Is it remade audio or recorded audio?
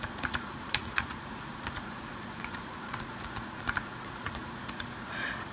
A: remade